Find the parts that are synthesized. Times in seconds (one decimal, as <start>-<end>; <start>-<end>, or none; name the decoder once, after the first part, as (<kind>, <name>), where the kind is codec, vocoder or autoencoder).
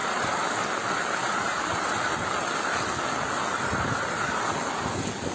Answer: 0.0-0.5 (vocoder, BigVGAN v2); 1.2-1.9; 3.5-4.5